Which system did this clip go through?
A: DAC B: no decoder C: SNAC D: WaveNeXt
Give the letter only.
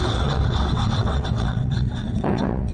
D